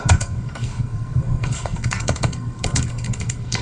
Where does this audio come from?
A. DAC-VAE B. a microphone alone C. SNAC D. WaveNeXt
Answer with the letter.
C